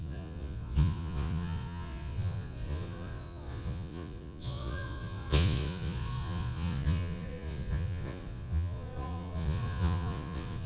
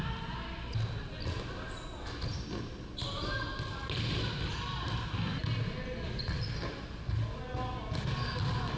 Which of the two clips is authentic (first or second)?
second